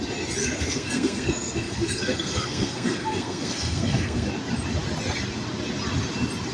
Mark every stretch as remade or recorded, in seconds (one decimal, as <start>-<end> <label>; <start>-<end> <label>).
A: 0.0-0.4 recorded; 0.4-4.3 remade; 4.3-6.5 recorded